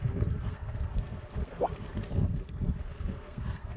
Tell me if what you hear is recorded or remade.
remade